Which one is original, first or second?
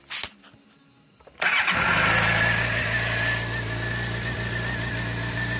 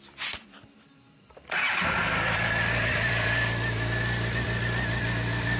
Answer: first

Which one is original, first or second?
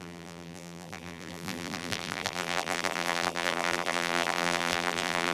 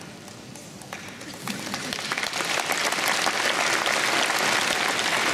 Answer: second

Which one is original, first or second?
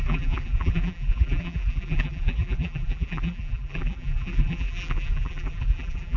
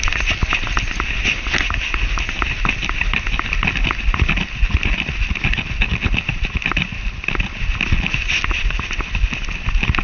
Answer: second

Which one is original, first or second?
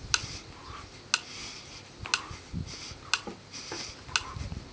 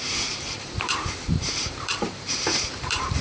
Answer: first